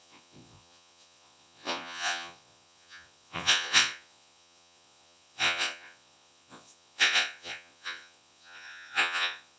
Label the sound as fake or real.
fake